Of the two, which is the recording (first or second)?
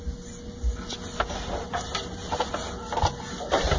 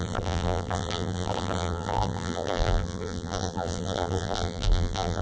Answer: first